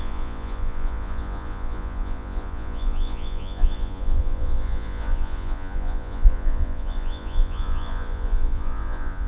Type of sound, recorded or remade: remade